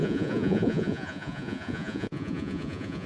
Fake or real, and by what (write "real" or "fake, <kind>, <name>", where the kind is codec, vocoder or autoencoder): fake, vocoder, Vocos